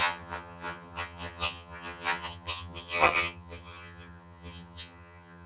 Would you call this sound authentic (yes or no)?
no